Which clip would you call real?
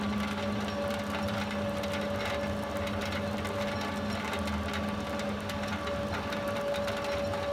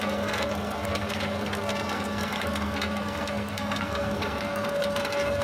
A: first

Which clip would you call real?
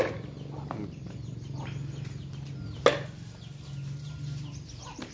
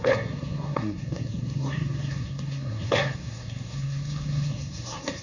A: first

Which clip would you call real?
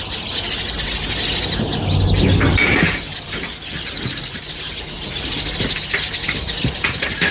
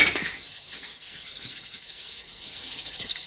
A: first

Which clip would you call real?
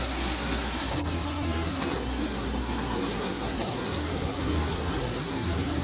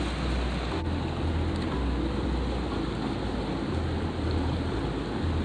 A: second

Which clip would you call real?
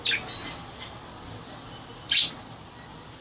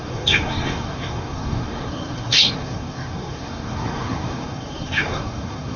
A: first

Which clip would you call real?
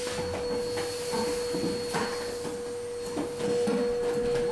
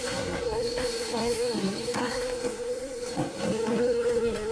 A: first